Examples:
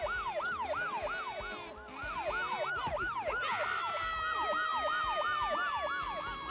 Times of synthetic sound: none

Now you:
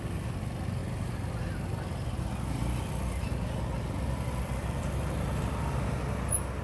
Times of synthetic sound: none